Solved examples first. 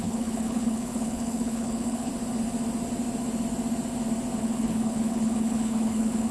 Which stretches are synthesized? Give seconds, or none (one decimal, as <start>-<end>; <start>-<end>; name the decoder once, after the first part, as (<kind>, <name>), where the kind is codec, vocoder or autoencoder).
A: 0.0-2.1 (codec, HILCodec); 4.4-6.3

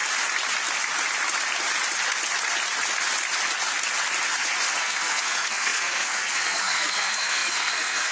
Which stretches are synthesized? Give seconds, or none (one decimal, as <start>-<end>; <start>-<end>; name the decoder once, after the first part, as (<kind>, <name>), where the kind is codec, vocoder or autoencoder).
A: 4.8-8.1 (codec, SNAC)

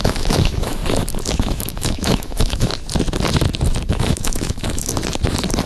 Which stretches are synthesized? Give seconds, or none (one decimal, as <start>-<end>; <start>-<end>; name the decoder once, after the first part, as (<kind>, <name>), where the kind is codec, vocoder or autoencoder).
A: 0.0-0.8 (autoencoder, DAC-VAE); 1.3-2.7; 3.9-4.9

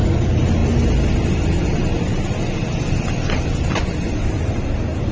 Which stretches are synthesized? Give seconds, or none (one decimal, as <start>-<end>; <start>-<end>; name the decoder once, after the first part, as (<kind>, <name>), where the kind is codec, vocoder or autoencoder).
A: none

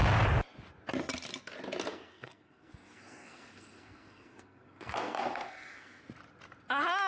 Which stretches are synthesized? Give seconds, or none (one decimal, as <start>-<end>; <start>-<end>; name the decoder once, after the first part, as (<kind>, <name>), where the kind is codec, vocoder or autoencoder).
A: 1.9-6.0 (codec, SNAC)

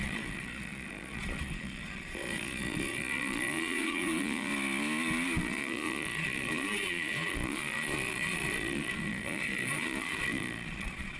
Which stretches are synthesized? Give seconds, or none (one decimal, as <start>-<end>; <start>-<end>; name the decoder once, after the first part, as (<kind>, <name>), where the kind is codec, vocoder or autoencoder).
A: 0.0-4.5 (vocoder, Vocos); 5.4-11.2